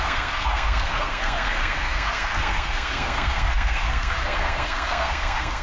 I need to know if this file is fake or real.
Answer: fake